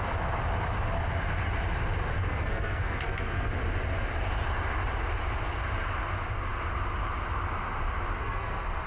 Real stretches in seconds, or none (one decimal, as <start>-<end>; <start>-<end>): 0.0-2.1; 3.5-8.2